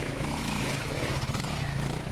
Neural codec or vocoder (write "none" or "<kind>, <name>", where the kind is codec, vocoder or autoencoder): autoencoder, DAC-VAE